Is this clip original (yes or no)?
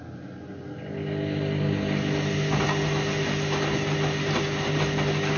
yes